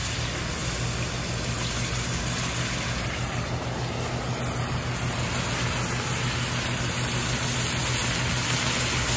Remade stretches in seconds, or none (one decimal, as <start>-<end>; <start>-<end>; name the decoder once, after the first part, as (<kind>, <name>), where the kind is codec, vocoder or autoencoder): none